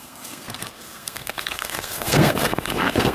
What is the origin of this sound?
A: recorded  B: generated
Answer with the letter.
B